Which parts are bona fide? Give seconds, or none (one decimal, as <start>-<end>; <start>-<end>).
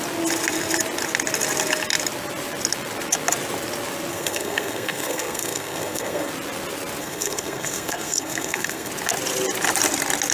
0.0-4.1; 6.3-7.0; 8.9-10.3